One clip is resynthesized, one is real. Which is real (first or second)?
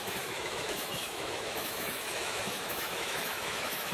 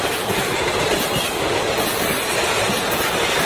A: second